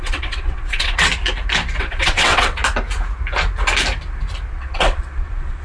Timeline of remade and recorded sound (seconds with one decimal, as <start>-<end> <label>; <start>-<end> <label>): 0.0-1.1 remade; 1.1-1.8 recorded; 1.8-2.6 remade; 2.6-4.5 recorded; 4.5-5.6 remade